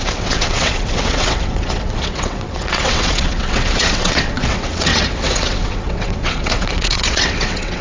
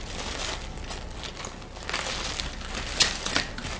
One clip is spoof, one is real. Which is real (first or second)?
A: second